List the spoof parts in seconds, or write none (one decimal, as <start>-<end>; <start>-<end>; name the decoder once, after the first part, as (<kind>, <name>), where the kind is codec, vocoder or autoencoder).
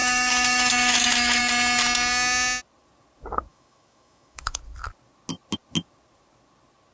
0.0-1.4 (autoencoder, DAC-VAE); 3.5-4.6